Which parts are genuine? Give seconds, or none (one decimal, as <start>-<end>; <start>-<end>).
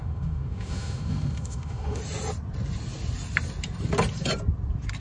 2.0-5.0